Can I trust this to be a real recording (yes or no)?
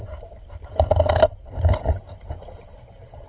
yes